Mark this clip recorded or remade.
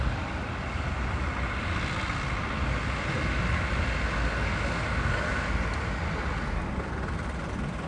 recorded